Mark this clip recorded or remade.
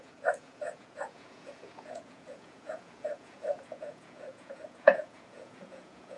remade